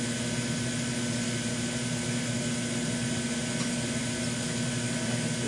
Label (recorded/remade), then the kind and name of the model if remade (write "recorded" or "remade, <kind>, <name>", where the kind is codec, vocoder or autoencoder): recorded